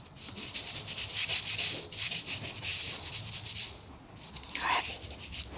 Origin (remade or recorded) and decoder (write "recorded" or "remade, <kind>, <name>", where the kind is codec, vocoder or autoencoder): recorded